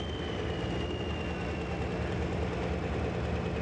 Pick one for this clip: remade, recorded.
recorded